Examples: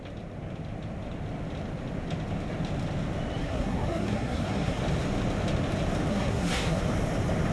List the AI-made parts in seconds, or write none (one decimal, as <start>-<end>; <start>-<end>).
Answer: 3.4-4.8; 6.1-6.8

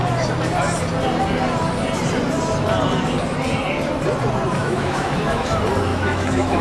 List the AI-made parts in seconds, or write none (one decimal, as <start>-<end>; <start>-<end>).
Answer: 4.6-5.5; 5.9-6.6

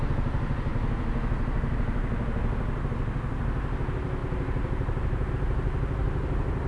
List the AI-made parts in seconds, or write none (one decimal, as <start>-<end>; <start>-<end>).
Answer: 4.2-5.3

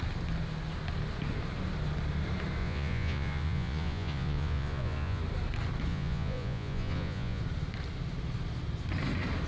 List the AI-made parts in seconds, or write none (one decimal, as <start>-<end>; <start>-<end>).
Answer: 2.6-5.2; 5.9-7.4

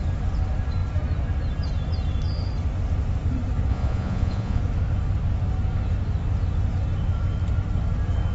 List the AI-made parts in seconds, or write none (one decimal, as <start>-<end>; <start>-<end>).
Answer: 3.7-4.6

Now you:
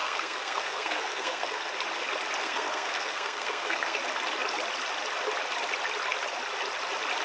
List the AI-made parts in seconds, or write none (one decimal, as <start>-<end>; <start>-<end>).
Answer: 0.0-1.7; 2.4-4.0

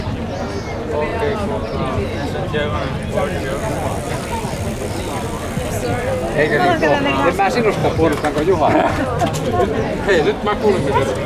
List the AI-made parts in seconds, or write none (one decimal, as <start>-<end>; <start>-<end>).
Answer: 1.1-5.7; 7.8-9.0; 9.6-10.6